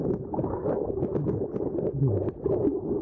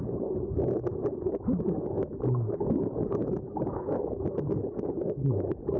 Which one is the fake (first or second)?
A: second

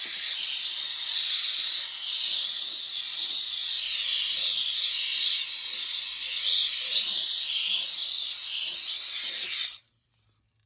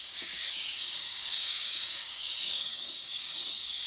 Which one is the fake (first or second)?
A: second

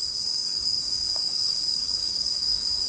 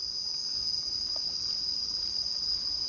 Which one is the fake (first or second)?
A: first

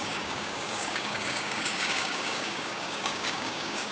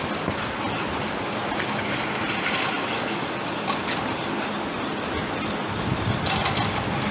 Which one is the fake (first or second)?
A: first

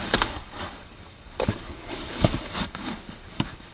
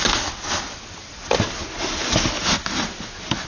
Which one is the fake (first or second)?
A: first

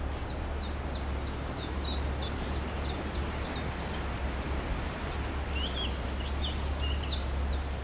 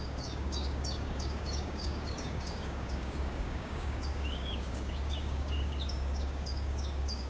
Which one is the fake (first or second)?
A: second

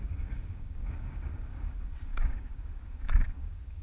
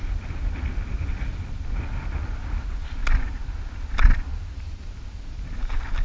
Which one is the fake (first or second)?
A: first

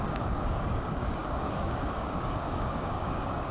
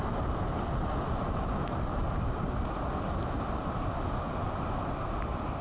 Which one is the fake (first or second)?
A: first